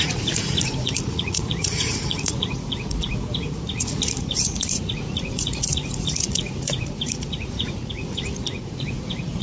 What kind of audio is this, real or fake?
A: fake